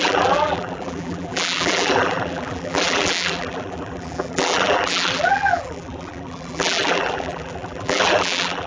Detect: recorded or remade remade